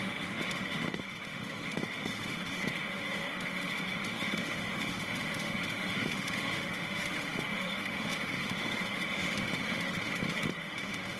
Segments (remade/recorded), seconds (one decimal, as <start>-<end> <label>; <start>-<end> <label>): 0.0-11.2 remade